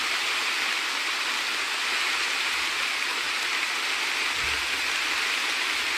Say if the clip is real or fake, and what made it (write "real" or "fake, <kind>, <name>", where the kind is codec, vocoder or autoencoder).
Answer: real